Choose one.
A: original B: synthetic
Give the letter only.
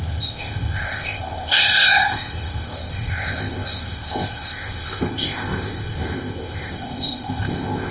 B